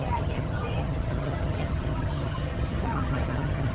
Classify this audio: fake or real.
fake